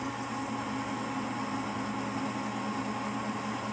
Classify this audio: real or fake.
real